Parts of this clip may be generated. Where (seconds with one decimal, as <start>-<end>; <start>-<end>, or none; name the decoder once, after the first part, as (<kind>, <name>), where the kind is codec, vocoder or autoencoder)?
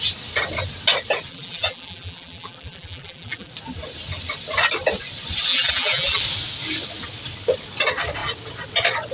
1.3-3.5 (vocoder, BigVGAN v2); 5.5-6.2